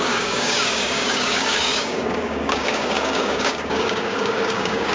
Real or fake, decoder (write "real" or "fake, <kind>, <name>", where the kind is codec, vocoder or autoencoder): fake, codec, DAC